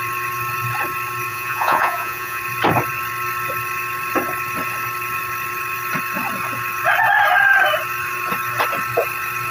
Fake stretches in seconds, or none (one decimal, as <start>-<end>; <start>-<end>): 1.3-2.4